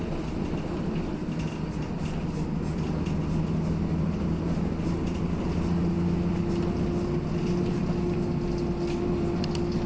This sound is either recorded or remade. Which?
recorded